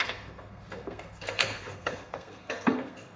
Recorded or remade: remade